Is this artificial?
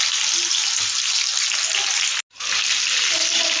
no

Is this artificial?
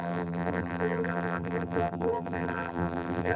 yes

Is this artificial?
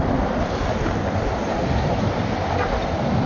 yes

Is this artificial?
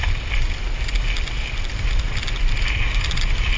no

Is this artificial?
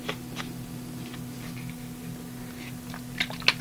no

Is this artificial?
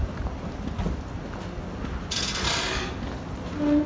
no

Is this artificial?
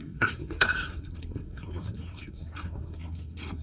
yes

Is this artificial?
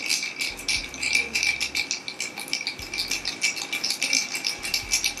no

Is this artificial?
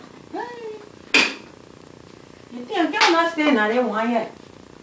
no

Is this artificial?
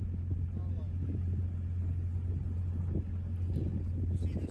no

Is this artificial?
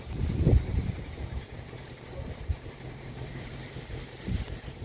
yes